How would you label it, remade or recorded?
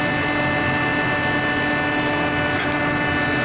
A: recorded